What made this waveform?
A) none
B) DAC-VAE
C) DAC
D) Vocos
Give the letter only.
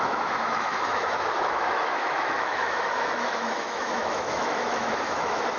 B